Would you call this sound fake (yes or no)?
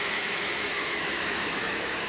yes